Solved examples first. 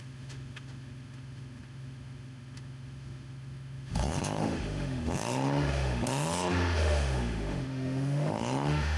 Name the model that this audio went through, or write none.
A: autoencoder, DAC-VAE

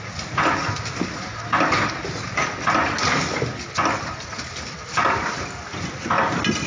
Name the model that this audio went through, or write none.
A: none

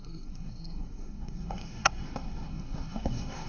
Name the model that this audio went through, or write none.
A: codec, SNAC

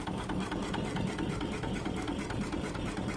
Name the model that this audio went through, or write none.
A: none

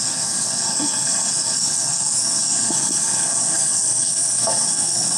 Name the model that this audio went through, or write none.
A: codec, SNAC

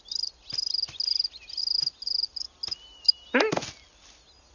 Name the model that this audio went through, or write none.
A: none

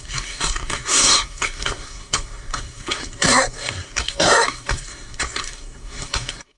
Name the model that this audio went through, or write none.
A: codec, SNAC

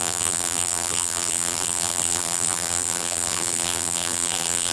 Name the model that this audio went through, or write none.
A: vocoder, BigVGAN v2